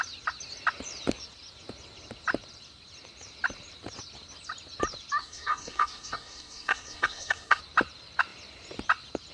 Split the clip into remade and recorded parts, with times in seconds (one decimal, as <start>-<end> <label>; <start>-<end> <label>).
0.0-5.2 recorded; 5.2-7.6 remade; 7.6-9.3 recorded